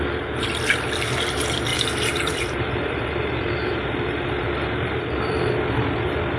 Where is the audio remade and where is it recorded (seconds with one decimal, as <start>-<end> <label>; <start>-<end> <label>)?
0.0-1.7 recorded; 1.7-5.5 remade; 5.5-6.4 recorded